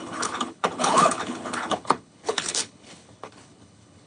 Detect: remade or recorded remade